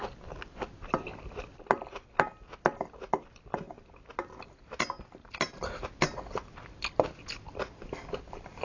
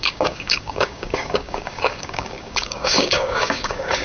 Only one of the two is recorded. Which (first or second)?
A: first